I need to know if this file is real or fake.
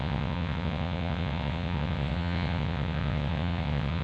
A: fake